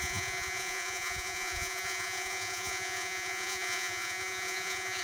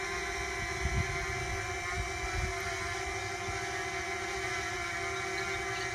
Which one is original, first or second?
second